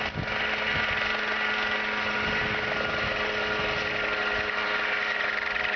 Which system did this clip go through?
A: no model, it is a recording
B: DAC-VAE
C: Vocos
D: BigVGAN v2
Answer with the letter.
A